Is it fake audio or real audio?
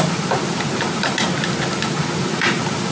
real